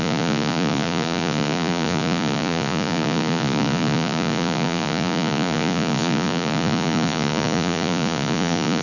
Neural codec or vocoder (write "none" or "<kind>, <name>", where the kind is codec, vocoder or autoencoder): vocoder, Vocos